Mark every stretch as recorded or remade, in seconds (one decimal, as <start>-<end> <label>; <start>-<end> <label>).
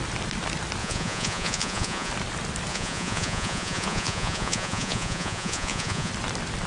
0.0-0.8 recorded; 0.8-2.1 remade; 2.1-2.7 recorded; 2.7-6.1 remade; 6.1-6.7 recorded